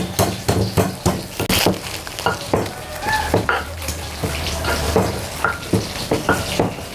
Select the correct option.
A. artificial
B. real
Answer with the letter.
B